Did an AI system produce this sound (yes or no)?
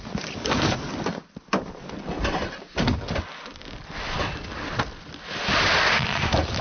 no